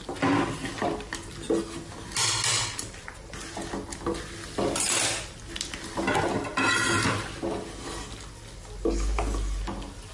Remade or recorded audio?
recorded